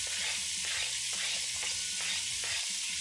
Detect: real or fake real